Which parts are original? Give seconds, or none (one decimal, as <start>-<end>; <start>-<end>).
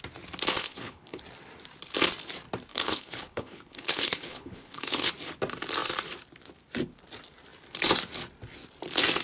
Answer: 0.0-0.6; 1.2-2.7; 5.1-9.2